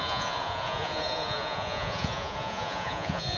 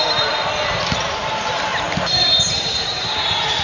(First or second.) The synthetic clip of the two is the first